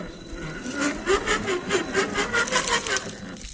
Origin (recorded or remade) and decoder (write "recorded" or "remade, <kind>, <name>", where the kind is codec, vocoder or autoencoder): recorded